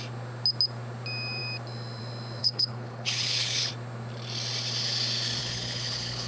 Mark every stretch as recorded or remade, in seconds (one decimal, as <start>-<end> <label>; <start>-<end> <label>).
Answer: 0.0-2.4 recorded; 2.4-3.7 remade; 3.7-5.4 recorded; 5.4-6.3 remade